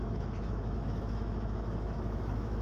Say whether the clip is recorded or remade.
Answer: remade